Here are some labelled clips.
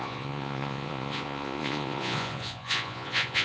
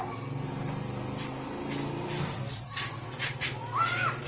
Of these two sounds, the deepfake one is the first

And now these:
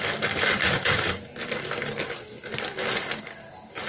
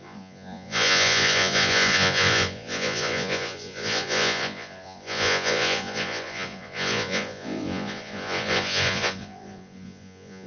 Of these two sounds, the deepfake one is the second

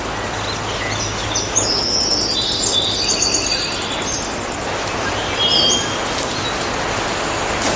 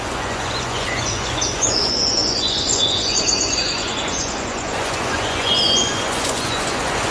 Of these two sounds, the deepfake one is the second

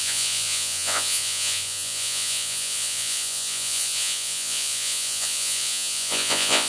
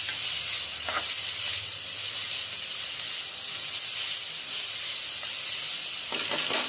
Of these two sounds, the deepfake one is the first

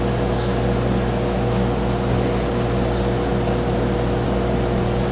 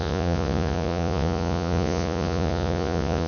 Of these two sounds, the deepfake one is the second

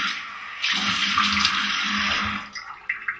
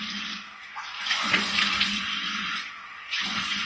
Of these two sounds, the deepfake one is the second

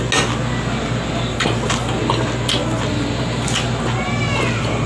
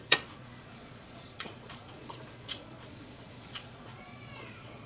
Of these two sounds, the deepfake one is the second